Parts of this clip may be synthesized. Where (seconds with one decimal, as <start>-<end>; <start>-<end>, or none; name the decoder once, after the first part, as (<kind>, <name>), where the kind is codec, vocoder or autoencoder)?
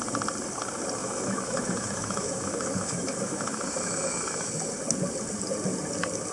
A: 1.0-4.5 (autoencoder, DAC-VAE)